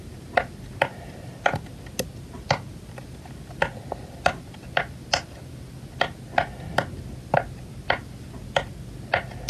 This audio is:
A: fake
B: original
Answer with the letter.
B